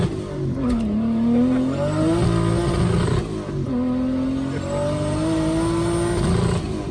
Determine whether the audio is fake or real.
real